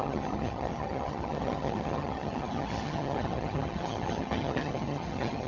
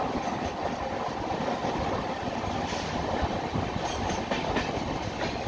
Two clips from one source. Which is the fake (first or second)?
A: first